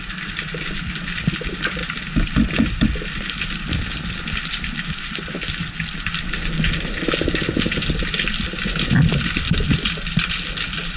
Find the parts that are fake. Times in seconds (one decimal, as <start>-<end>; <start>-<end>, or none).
none